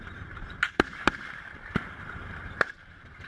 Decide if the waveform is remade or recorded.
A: remade